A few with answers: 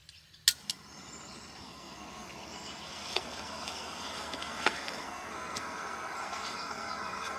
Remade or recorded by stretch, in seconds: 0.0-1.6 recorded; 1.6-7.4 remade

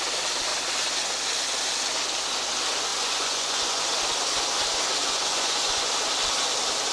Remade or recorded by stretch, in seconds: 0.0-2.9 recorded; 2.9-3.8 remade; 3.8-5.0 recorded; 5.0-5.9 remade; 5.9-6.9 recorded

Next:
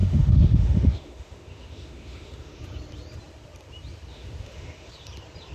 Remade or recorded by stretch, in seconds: 0.0-2.6 remade; 2.6-4.1 recorded; 4.1-4.9 remade; 4.9-5.5 recorded

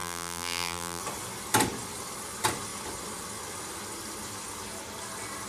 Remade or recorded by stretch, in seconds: 0.0-1.0 remade; 1.0-5.5 recorded